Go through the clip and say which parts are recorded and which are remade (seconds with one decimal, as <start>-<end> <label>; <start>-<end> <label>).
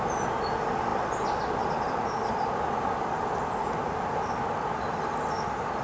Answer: 0.0-5.8 recorded